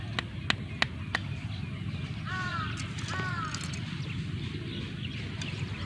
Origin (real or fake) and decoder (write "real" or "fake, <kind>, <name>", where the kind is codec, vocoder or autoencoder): real